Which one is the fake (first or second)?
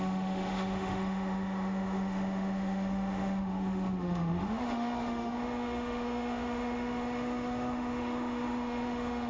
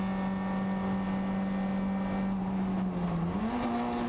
first